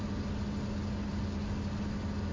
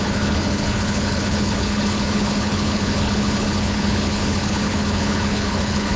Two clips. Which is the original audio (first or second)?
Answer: first